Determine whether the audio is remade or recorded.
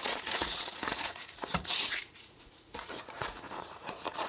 remade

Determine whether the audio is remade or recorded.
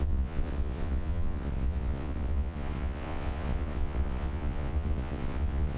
remade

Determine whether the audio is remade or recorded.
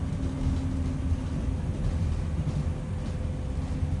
recorded